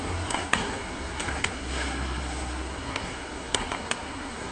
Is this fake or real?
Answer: fake